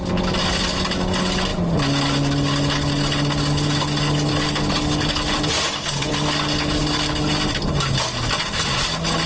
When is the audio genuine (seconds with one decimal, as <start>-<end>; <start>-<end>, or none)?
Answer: 0.0-9.3